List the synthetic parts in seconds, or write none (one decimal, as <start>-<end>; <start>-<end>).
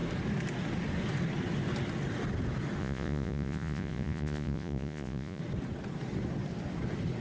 2.8-5.4